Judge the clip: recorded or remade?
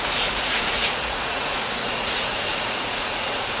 remade